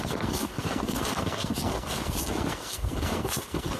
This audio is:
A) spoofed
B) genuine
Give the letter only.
A